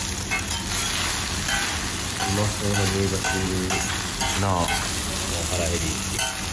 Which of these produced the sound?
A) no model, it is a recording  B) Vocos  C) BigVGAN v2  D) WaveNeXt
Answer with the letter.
A